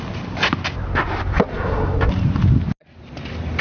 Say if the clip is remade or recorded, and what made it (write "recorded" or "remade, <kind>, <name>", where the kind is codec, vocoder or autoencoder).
recorded